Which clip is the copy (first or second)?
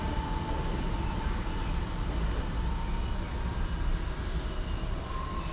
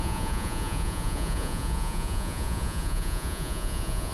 second